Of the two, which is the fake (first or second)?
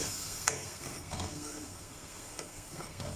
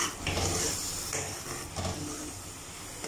first